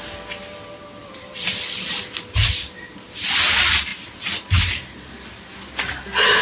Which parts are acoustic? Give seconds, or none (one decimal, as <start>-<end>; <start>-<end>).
0.0-1.0; 2.5-6.4